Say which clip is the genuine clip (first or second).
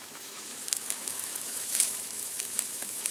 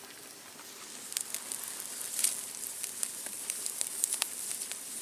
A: second